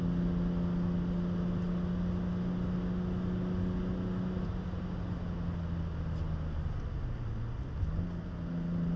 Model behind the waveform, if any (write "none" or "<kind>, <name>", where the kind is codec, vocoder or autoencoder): none